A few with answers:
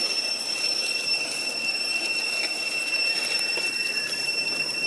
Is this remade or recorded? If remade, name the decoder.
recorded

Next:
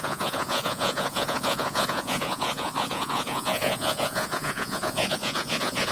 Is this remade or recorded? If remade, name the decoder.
remade, vocoder, Vocos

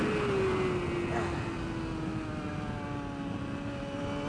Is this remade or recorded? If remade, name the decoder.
recorded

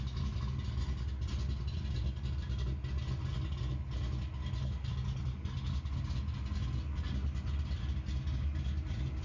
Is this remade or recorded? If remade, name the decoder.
recorded